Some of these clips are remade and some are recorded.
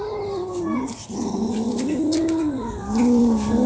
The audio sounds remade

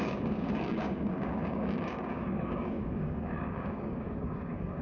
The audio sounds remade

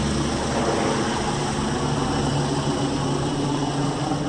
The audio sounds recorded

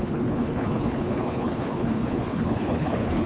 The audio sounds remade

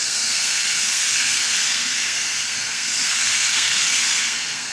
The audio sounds remade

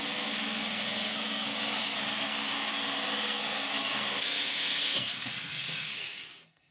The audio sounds remade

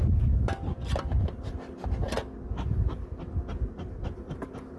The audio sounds recorded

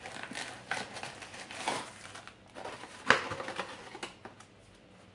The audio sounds recorded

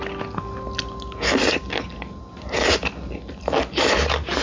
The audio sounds recorded